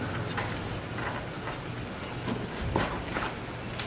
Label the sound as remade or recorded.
recorded